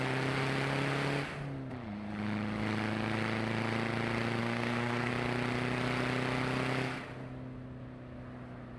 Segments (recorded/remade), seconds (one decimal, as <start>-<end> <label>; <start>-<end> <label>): 0.0-4.4 recorded; 4.4-5.1 remade; 5.1-8.8 recorded